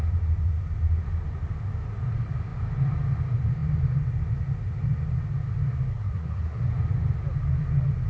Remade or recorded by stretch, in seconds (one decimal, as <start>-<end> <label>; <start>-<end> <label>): 0.0-5.9 recorded; 5.9-6.7 remade; 6.7-8.1 recorded